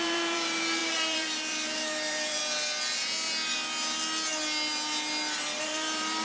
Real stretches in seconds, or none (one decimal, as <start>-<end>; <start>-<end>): 2.4-5.6